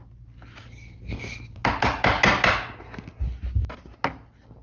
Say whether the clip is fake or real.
real